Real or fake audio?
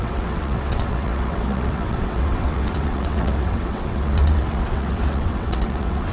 fake